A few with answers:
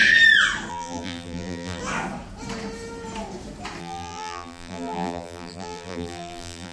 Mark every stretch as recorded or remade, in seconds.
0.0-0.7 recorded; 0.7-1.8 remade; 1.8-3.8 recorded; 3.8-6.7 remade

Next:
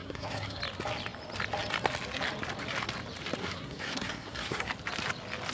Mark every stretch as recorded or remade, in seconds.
0.0-0.6 remade; 0.6-3.4 recorded; 3.4-4.7 remade; 4.7-5.5 recorded

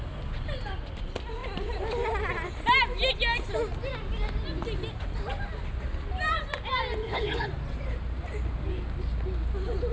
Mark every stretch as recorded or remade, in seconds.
0.0-7.0 recorded; 7.0-7.5 remade; 7.5-9.9 recorded

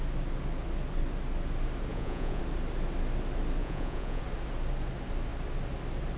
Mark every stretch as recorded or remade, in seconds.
0.0-1.9 recorded; 1.9-2.4 remade; 2.4-3.6 recorded; 3.6-4.2 remade; 4.2-6.2 recorded

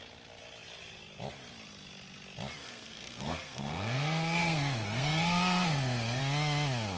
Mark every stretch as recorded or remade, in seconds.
0.0-2.6 recorded; 2.6-6.2 remade; 6.2-7.0 recorded

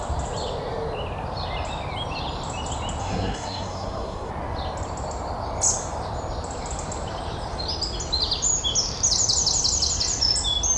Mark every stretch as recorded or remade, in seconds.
0.0-3.0 recorded; 3.0-4.3 remade; 4.3-10.8 recorded

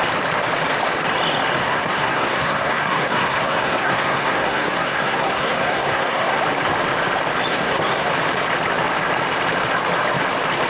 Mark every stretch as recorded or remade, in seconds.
0.0-1.6 recorded; 1.6-6.4 remade; 6.4-7.5 recorded; 7.5-8.1 remade; 8.1-10.7 recorded

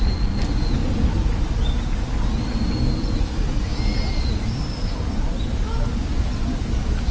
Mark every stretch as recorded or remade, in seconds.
0.0-7.1 recorded